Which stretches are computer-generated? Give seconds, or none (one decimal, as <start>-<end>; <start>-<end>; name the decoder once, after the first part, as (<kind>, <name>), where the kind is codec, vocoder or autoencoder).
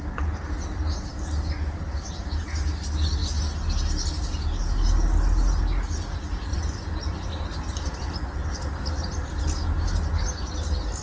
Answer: 6.5-9.4 (vocoder, BigVGAN v2)